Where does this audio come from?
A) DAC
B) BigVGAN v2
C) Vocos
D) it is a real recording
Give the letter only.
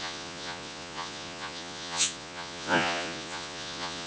C